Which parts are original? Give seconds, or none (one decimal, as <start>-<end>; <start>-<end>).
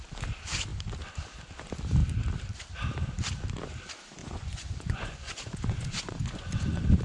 0.0-4.2